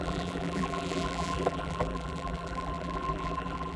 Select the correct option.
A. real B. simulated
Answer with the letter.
B